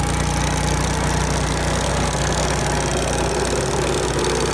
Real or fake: real